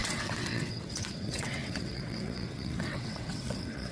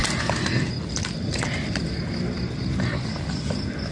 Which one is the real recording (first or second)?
second